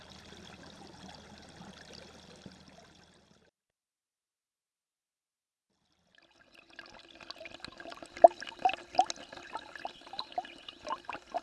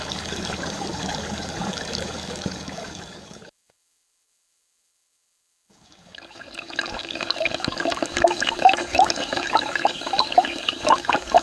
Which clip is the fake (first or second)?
second